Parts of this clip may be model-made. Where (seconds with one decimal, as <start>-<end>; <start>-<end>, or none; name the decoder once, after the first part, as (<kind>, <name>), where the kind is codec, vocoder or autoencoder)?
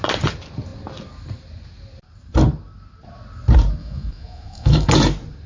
3.8-4.9 (autoencoder, DAC-VAE)